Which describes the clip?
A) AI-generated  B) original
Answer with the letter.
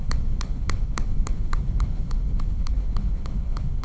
A